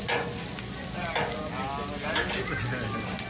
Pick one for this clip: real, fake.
real